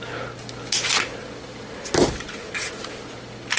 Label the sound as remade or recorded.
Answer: recorded